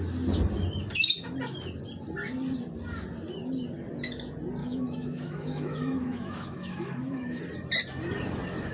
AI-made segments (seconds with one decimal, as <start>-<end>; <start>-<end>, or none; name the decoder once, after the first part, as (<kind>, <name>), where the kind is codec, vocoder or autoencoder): 4.6-7.4 (autoencoder, DAC-VAE)